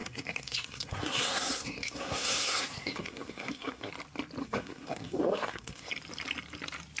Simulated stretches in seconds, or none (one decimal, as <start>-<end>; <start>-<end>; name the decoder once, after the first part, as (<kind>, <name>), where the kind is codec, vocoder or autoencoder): 0.0-3.9 (codec, SNAC); 4.4-5.9